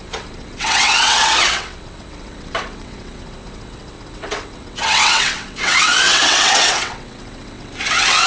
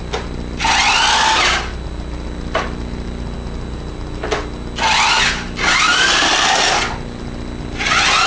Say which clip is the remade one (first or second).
first